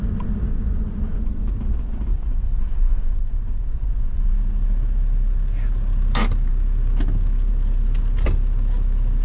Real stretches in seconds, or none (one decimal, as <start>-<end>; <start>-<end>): 0.0-0.5; 1.4-2.1; 4.3-9.2